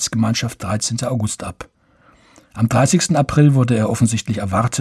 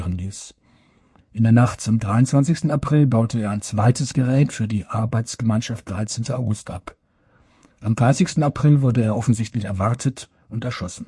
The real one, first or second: first